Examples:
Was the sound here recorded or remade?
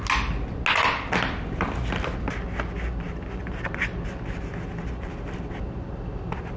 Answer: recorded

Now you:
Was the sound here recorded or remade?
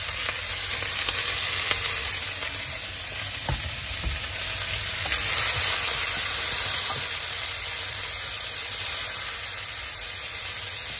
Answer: recorded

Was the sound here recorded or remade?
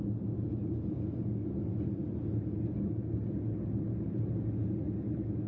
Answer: recorded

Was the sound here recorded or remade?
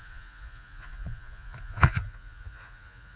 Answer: remade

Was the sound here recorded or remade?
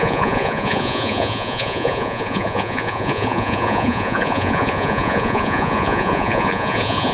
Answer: remade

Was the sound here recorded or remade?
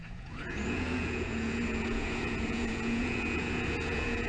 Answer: remade